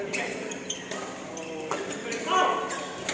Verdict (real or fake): real